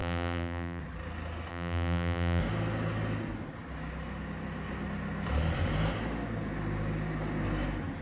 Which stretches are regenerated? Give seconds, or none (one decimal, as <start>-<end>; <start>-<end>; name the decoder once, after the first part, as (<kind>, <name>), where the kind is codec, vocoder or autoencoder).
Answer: 0.0-0.8 (vocoder, BigVGAN v2); 1.5-2.4